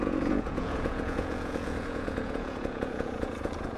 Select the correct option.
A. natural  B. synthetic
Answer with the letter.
B